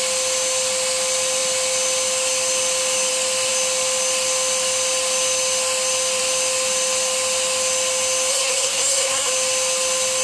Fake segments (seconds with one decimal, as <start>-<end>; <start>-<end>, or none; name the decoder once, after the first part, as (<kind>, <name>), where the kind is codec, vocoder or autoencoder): 8.3-9.3 (codec, SNAC)